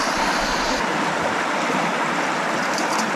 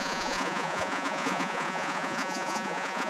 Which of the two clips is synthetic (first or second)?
second